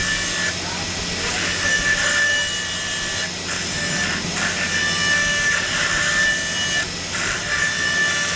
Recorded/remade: recorded